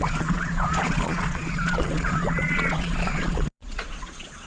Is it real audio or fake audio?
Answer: fake